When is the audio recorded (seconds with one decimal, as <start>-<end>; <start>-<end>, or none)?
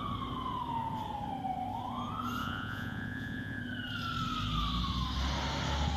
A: 0.0-2.4; 3.6-6.0